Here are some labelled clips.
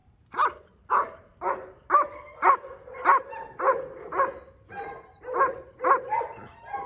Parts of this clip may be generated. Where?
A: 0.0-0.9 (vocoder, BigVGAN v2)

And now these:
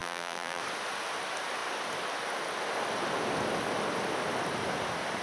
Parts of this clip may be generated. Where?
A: 0.0-0.6 (vocoder, BigVGAN v2)